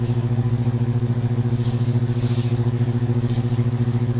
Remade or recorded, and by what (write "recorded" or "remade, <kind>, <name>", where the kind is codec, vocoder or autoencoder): remade, codec, DAC